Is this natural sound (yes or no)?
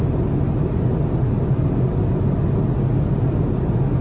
yes